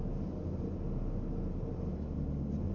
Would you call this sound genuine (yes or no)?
yes